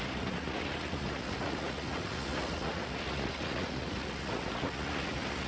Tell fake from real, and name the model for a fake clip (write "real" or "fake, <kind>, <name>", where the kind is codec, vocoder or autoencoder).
fake, vocoder, Vocos